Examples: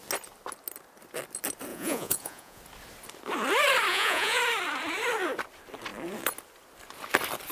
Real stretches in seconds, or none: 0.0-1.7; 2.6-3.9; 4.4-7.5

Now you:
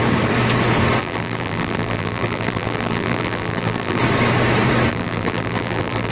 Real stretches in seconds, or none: 0.0-1.0; 4.0-4.9

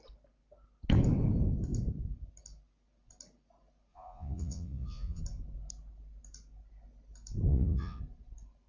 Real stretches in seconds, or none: 0.0-3.9; 5.2-7.5; 8.0-8.7

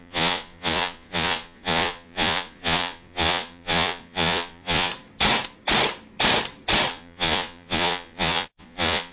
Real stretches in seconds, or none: 4.9-6.9

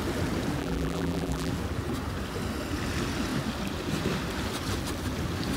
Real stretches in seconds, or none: 0.0-0.6; 1.5-5.6